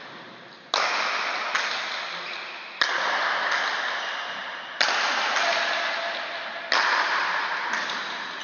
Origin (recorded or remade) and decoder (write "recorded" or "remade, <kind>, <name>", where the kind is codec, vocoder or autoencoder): recorded